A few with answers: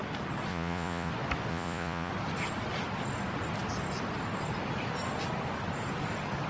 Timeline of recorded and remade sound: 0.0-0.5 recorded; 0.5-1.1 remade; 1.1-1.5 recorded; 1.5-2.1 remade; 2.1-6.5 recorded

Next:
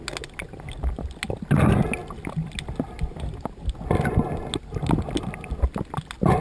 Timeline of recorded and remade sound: 0.0-6.4 recorded